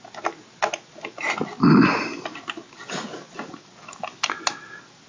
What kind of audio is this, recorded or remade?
recorded